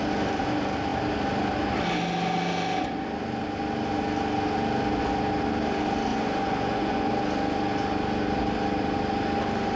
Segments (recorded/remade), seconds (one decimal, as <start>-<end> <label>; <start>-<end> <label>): 0.0-6.1 recorded; 6.1-7.1 remade; 7.1-9.8 recorded